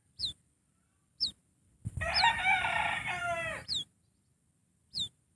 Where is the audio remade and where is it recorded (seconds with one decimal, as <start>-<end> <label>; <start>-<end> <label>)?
0.0-5.4 recorded